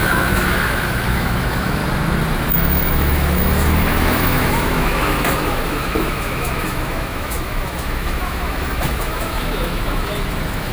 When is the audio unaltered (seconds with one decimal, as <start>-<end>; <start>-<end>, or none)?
1.8-2.5